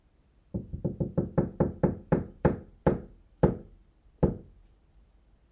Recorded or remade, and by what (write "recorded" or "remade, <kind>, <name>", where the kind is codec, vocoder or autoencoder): remade, vocoder, BigVGAN v2